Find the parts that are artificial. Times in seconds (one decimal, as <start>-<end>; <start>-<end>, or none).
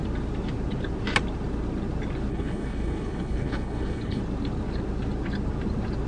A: 2.3-4.2